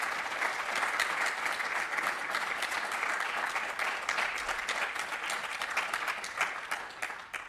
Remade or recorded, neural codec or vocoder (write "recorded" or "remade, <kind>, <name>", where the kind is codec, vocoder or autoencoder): recorded